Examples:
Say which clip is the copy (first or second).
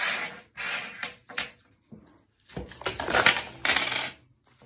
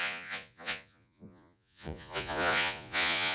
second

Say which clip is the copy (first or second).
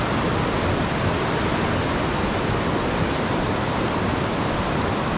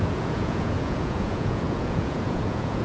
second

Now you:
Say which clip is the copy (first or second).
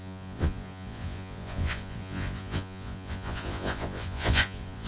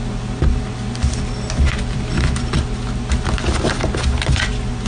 first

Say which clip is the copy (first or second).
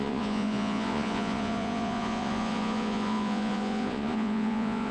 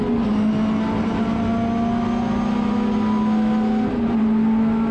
first